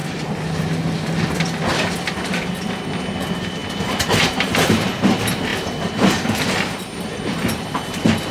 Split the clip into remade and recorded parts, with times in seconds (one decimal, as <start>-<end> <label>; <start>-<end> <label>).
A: 0.0-7.4 recorded; 7.4-8.3 remade

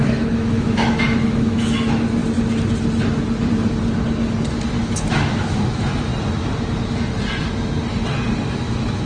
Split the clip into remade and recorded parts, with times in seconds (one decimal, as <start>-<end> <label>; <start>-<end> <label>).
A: 0.0-2.2 remade; 2.2-5.1 recorded; 5.1-6.1 remade; 6.1-8.5 recorded; 8.5-9.1 remade

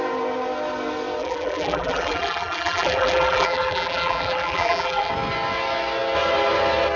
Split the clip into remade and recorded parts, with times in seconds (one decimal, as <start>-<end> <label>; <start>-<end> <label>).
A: 0.0-1.2 recorded; 1.2-5.1 remade; 5.1-7.0 recorded

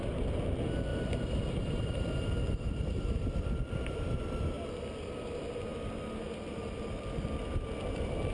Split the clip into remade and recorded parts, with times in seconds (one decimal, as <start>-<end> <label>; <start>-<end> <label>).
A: 0.0-0.9 recorded; 0.9-4.2 remade; 4.2-8.3 recorded

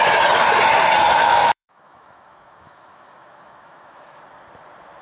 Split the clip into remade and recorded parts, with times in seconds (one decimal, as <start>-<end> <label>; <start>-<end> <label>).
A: 0.0-1.2 recorded; 1.2-4.2 remade; 4.2-5.0 recorded

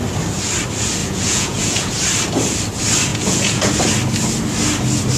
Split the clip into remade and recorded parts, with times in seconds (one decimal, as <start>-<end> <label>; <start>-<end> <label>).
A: 0.0-1.0 recorded; 1.0-1.9 remade; 1.9-3.1 recorded; 3.1-3.7 remade; 3.7-5.2 recorded